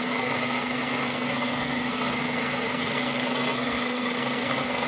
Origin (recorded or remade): remade